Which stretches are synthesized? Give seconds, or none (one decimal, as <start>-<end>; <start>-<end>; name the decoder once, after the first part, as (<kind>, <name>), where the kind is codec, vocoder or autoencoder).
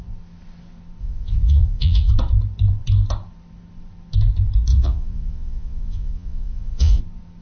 1.0-2.1 (vocoder, Vocos); 4.7-7.0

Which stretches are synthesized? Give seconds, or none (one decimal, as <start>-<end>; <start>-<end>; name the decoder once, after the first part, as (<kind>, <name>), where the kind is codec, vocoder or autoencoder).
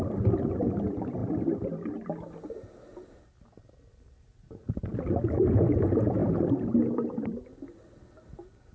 none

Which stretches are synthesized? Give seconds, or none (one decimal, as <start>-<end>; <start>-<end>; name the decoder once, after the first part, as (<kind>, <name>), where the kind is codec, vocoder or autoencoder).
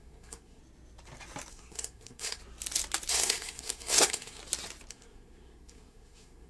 0.0-0.6 (codec, SNAC); 1.5-2.4; 3.1-4.4; 4.9-6.5